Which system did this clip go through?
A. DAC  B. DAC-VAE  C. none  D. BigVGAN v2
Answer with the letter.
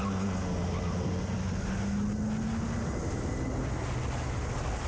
C